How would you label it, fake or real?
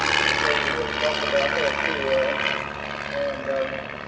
real